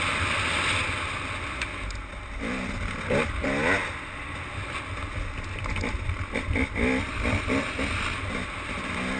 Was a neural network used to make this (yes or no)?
no